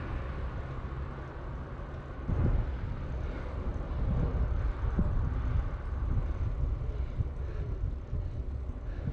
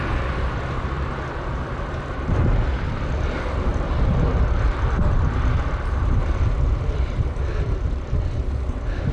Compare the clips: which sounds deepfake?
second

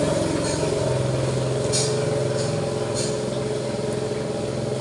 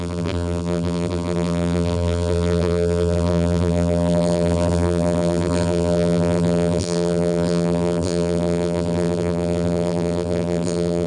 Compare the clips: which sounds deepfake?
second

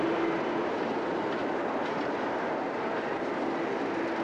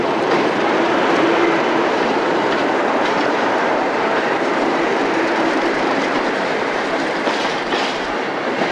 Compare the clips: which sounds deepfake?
second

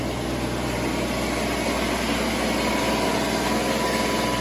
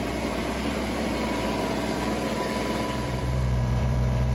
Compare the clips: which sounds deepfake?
second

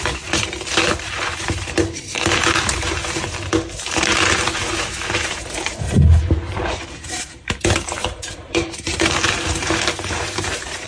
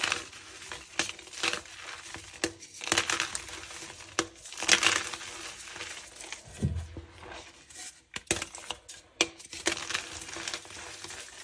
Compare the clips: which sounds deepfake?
first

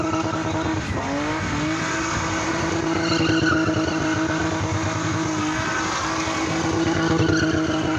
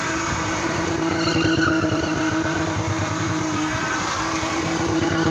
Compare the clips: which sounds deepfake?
second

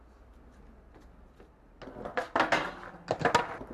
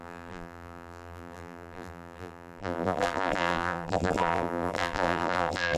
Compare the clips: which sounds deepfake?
second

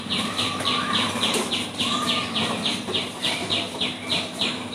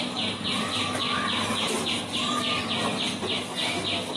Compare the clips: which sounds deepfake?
first